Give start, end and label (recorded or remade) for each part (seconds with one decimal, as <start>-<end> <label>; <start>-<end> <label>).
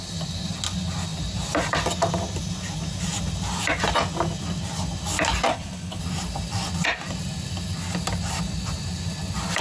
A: 0.0-5.5 recorded; 5.5-6.0 remade; 6.0-9.6 recorded